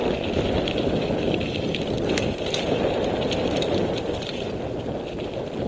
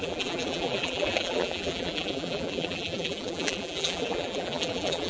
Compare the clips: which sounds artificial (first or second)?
second